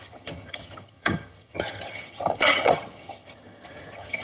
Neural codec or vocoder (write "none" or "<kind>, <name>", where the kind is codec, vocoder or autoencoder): vocoder, HiFi-GAN